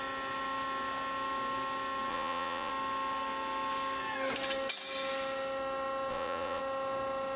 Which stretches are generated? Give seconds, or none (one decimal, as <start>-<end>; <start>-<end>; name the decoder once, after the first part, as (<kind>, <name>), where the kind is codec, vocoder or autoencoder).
2.1-2.7 (vocoder, Vocos); 6.1-6.6